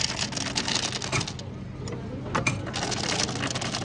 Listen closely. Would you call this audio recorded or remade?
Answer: recorded